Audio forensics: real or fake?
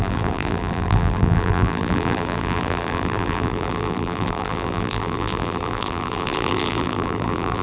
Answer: fake